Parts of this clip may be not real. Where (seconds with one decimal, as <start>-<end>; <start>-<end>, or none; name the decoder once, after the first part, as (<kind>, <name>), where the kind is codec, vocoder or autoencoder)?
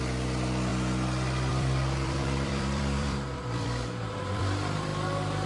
0.0-0.7 (vocoder, BigVGAN v2); 1.5-4.9